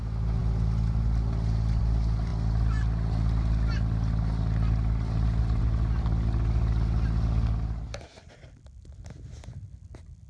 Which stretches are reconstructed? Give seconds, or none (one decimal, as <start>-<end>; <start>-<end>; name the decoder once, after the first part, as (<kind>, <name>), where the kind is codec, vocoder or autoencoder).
none